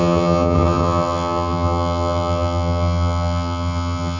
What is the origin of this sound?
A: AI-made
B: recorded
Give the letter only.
A